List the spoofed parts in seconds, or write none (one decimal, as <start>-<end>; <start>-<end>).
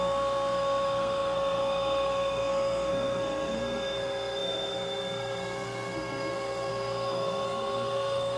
0.0-8.4